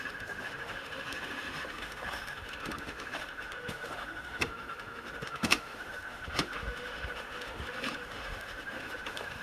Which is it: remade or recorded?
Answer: remade